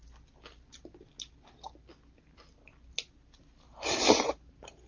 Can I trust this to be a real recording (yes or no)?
yes